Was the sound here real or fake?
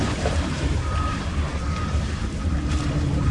fake